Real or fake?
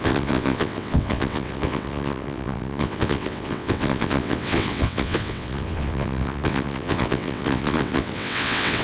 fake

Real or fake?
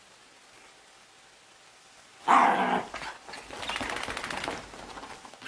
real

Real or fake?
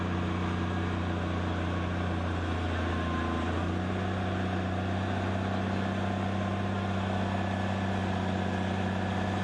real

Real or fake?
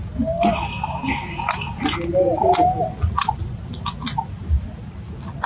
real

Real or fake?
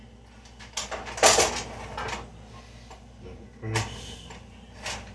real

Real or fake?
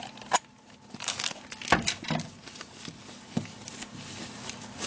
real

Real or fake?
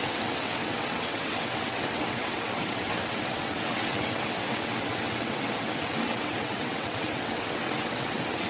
fake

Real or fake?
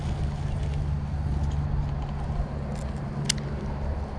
real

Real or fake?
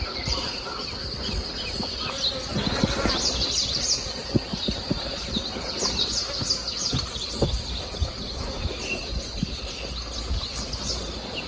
real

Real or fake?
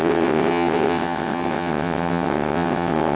fake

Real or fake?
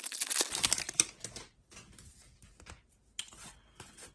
real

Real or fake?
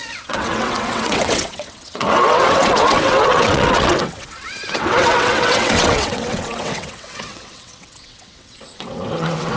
fake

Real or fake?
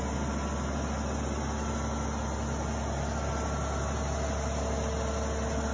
real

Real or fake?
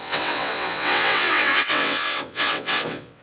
fake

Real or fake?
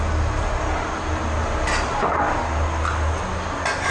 real